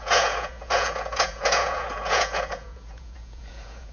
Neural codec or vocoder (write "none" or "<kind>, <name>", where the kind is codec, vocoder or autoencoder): vocoder, Vocos